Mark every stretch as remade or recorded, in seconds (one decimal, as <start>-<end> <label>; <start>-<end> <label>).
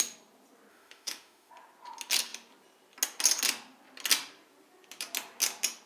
0.0-0.7 recorded; 0.7-1.5 remade; 1.5-5.9 recorded